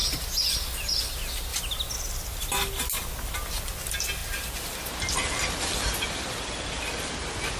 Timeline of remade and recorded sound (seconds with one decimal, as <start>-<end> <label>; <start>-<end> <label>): 0.0-7.6 recorded

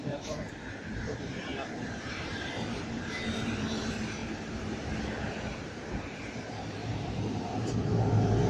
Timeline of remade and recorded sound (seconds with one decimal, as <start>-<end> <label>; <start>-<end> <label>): 0.0-1.5 remade; 1.5-2.0 recorded; 2.0-8.5 remade